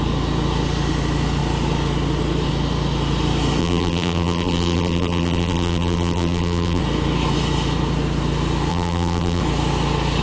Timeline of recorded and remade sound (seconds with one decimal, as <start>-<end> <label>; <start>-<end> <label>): 0.0-3.6 recorded; 3.6-6.8 remade; 6.8-8.7 recorded; 8.7-9.4 remade; 9.4-10.2 recorded